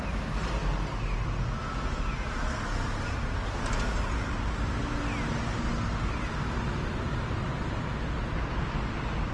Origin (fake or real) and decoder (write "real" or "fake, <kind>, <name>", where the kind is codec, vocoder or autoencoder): real